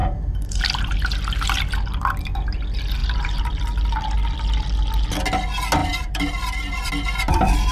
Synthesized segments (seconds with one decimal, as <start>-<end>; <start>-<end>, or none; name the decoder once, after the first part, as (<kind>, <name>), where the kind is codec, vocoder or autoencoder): 0.0-0.6 (vocoder, BigVGAN v2); 3.0-3.6; 5.8-6.9